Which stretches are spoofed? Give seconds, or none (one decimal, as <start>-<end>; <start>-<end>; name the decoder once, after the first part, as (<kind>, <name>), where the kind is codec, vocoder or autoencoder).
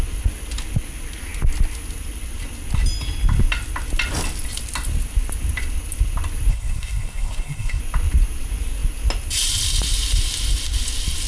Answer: 6.5-7.8 (codec, SNAC)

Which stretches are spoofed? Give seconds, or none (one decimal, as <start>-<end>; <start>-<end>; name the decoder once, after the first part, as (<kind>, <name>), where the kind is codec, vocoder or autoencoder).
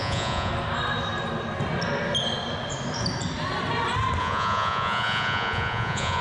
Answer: 0.0-0.5 (vocoder, Vocos); 4.2-6.2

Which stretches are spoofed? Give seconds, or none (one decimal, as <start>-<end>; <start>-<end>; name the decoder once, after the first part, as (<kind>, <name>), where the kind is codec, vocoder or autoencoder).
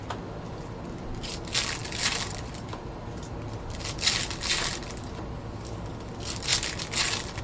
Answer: 5.4-6.1 (codec, DAC)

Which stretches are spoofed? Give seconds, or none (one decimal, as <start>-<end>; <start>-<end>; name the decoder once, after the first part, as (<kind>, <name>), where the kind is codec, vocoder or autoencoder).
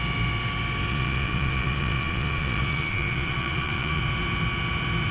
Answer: 0.9-4.0 (vocoder, Vocos)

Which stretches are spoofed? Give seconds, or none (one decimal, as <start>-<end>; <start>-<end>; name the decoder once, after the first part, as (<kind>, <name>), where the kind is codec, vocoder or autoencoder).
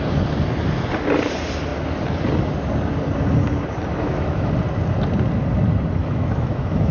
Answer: 3.9-4.5 (autoencoder, DAC-VAE); 6.0-6.9